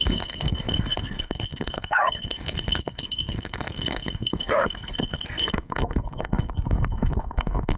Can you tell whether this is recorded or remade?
remade